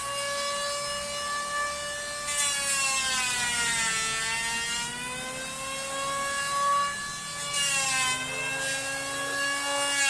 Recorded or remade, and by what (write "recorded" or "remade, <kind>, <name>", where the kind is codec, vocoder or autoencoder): recorded